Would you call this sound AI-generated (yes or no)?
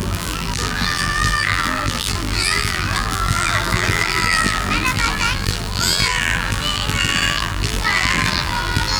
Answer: yes